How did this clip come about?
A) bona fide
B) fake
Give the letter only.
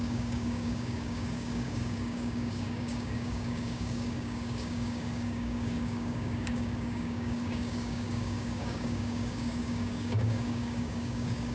B